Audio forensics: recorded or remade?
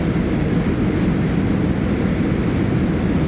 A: recorded